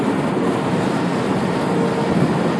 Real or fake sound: real